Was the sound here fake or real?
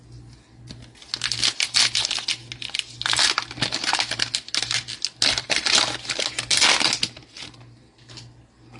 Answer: real